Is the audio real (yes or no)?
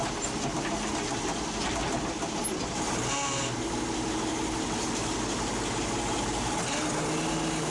yes